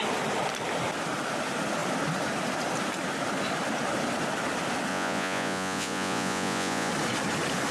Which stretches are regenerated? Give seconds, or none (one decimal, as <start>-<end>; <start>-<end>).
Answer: 4.9-6.9

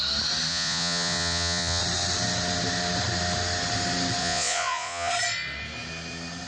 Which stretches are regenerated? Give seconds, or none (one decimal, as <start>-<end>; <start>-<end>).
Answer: 0.5-1.8; 4.2-5.1

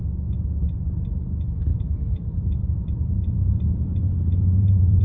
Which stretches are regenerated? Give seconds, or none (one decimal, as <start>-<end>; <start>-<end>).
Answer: 1.7-5.0

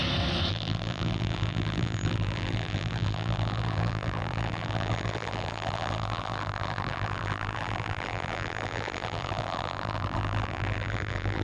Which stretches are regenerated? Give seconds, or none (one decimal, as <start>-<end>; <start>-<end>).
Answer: 0.5-11.4

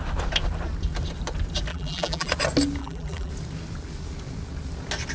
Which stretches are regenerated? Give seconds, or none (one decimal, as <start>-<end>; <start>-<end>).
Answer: 1.7-2.3; 2.8-3.3

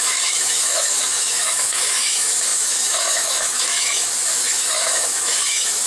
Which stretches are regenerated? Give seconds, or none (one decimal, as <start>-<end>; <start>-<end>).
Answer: 0.0-5.9